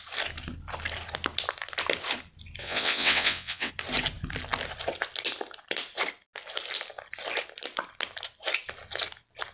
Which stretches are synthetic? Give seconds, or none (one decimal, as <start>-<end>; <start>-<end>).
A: 2.6-3.7